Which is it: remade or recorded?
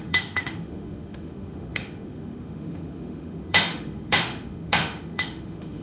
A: remade